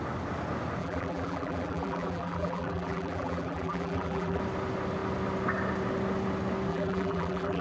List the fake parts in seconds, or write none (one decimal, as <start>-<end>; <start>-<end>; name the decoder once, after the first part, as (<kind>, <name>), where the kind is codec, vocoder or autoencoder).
0.8-4.4 (vocoder, BigVGAN v2); 6.7-7.6